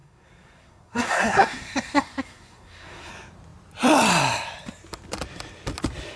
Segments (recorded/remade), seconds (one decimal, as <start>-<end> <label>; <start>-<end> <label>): 0.0-3.1 remade; 3.1-6.2 recorded